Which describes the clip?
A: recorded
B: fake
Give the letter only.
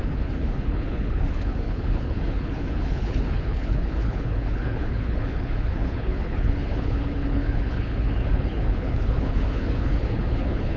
B